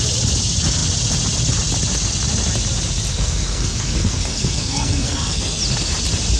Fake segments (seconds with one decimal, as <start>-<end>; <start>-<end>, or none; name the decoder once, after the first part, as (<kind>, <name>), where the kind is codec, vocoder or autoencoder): 3.1-5.6 (codec, SNAC)

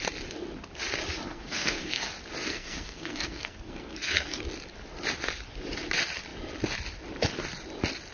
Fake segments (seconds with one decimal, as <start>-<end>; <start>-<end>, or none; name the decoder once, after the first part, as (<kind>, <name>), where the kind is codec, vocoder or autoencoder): 1.3-2.1 (codec, SNAC); 2.5-4.4

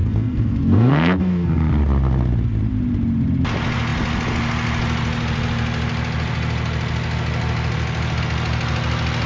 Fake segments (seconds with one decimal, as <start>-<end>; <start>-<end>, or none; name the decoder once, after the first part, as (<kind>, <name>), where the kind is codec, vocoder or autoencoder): 0.0-1.7 (codec, SNAC)

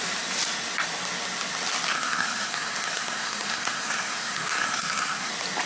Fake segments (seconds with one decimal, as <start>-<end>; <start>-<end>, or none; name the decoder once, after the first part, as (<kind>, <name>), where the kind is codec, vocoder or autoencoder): 1.9-5.3 (codec, SNAC)

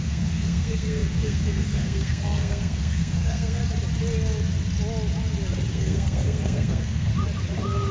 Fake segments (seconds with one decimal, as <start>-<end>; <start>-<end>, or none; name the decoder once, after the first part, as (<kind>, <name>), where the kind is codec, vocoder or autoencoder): 0.0-3.6 (codec, SNAC); 5.7-7.1

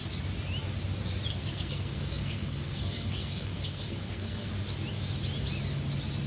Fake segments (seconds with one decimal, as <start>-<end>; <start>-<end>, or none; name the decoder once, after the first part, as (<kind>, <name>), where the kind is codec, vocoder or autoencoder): 1.3-4.5 (codec, SNAC)

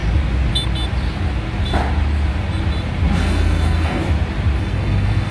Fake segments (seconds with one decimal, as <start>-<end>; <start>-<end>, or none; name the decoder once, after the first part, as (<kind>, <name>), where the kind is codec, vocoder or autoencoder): 3.2-4.0 (codec, SNAC); 4.6-5.3